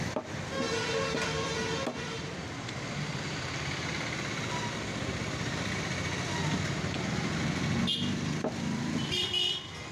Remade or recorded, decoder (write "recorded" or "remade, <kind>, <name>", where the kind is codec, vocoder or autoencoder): recorded